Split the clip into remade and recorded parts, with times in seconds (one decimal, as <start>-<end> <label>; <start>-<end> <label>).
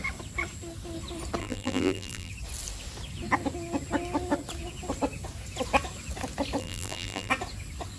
0.0-1.4 recorded; 1.4-2.3 remade; 2.3-6.6 recorded; 6.6-7.3 remade; 7.3-8.0 recorded